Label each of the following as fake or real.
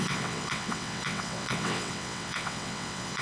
fake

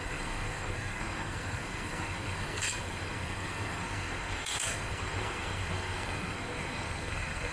fake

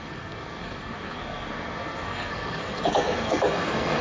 fake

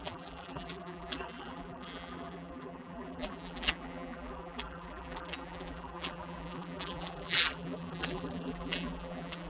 fake